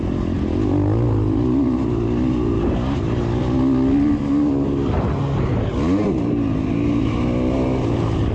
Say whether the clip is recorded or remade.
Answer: recorded